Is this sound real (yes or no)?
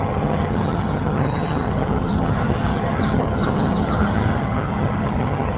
no